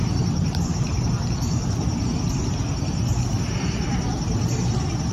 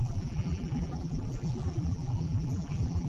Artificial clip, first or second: second